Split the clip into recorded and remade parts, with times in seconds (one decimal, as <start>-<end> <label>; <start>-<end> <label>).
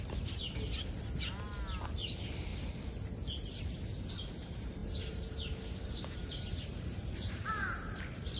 0.0-4.8 recorded; 4.8-8.0 remade; 8.0-8.4 recorded